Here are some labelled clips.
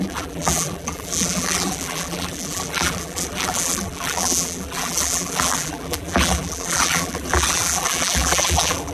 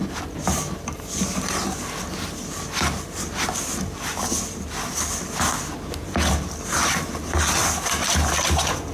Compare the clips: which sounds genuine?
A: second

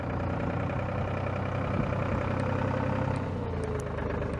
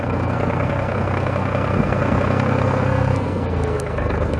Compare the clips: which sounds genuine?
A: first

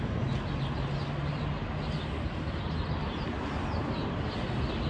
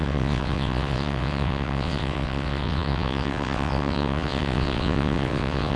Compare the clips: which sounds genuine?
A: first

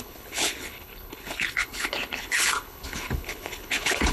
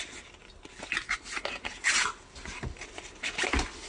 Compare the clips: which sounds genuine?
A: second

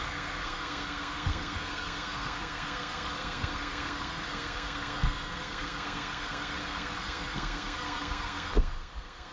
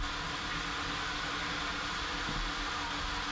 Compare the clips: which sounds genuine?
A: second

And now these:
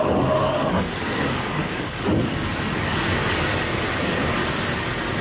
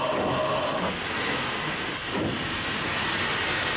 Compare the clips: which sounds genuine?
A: second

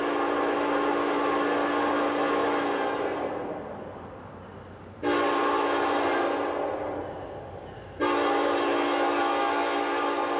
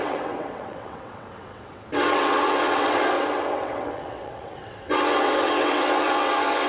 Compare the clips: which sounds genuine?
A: first